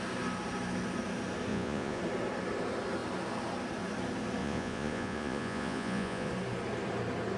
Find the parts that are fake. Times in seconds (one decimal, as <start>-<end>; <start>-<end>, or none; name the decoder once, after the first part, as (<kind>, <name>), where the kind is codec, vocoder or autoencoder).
1.5-2.0 (vocoder, Vocos); 4.4-6.3